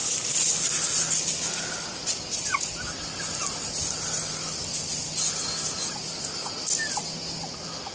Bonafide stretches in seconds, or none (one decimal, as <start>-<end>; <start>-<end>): 0.0-7.9